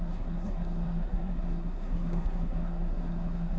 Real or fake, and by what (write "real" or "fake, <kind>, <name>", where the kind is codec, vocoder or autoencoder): fake, codec, SNAC